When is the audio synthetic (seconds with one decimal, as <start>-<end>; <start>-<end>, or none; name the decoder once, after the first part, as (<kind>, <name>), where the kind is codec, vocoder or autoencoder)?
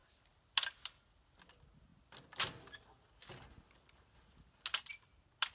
none